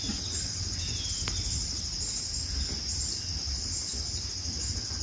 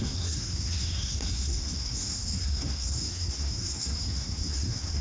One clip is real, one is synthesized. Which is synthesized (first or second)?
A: second